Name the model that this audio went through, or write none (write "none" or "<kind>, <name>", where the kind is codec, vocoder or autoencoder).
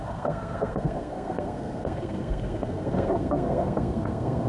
codec, SNAC